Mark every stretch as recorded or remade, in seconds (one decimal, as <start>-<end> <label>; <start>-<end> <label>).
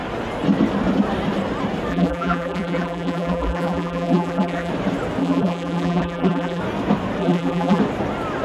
0.0-1.9 recorded; 1.9-4.7 remade; 4.7-5.2 recorded; 5.2-6.6 remade; 6.6-7.2 recorded; 7.2-7.8 remade; 7.8-8.4 recorded